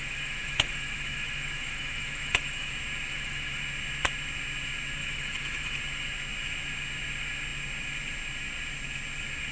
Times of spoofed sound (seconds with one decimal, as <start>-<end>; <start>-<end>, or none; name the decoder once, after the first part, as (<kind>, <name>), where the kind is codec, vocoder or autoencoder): 0.0-2.7 (autoencoder, DAC-VAE); 3.1-3.6; 5.0-5.8